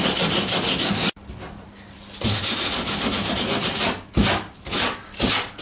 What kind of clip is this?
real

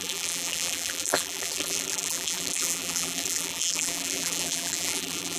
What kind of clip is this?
fake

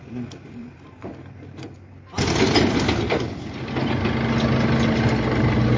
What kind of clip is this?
real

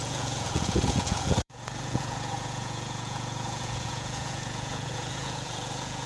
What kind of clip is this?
fake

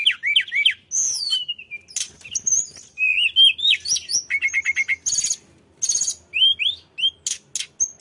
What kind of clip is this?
real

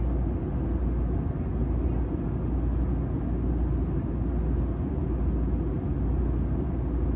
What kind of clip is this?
real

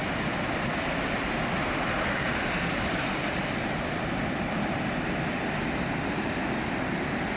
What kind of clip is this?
real